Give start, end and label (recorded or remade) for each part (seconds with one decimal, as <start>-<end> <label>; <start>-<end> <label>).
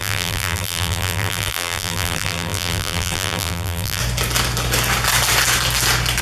0.0-4.0 remade; 4.0-6.2 recorded